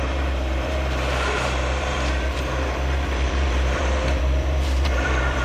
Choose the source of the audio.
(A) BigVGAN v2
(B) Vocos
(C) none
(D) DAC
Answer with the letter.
A